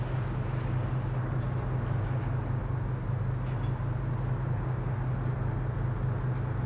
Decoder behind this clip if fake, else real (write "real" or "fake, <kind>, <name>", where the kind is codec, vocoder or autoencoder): real